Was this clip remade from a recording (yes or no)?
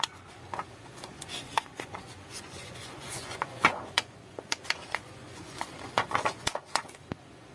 yes